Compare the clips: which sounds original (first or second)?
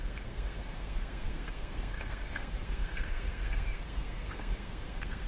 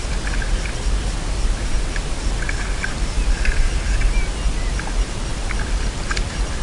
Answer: second